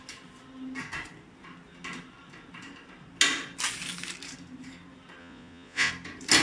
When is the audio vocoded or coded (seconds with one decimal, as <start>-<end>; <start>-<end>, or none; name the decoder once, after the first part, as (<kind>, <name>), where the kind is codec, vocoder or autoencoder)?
5.2-5.9 (vocoder, Vocos)